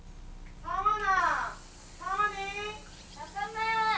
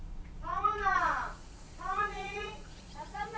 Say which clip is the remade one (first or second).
second